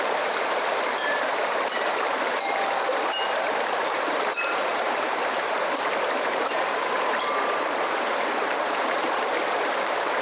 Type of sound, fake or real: fake